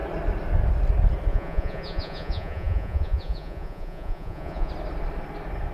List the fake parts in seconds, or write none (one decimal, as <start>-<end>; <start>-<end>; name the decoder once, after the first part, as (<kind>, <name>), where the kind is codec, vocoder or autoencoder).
1.3-4.7 (vocoder, Vocos)

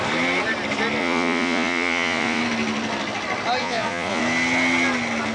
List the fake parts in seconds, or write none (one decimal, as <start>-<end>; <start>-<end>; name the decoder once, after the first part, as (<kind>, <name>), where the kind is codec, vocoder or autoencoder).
1.0-2.4 (vocoder, Vocos); 3.6-4.2

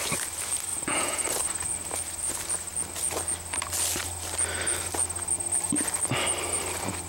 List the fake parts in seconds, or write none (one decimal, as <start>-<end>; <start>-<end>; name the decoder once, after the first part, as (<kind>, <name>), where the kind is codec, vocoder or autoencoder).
0.7-1.2 (vocoder, Vocos)

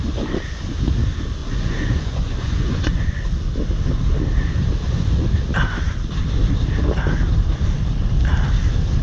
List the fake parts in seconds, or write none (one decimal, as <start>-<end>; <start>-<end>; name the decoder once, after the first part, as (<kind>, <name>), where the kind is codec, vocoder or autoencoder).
1.4-3.0 (vocoder, Vocos)

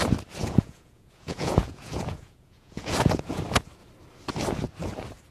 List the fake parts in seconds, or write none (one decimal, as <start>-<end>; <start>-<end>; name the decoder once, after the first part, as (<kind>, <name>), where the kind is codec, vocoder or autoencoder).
0.4-3.4 (vocoder, Vocos)

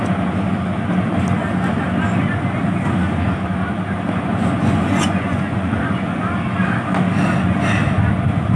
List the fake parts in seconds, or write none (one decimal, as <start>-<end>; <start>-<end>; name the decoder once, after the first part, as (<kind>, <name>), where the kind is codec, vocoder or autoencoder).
4.6-6.2 (vocoder, Vocos)